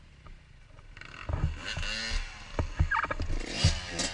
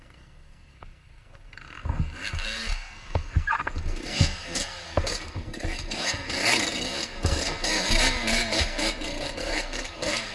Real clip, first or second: first